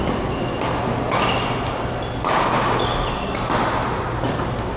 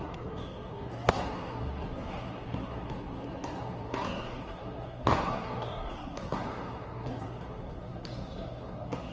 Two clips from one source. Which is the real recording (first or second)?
first